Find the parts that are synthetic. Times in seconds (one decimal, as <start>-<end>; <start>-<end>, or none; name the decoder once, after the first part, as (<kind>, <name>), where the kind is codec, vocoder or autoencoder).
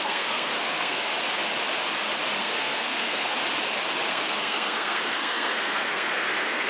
0.0-1.1 (codec, SNAC); 2.4-3.4; 4.1-6.7